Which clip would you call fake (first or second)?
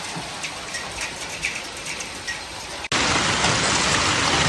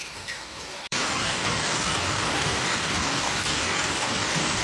second